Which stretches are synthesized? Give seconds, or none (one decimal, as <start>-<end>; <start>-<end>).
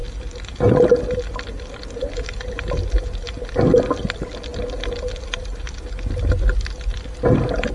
none